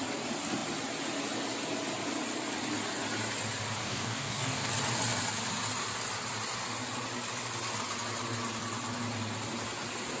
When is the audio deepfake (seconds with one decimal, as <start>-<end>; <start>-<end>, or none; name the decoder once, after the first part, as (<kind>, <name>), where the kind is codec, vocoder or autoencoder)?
3.8-4.7 (codec, DAC)